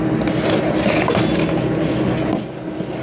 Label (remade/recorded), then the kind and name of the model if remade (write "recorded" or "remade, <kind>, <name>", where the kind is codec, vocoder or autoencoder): recorded